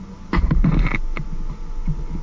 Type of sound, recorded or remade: recorded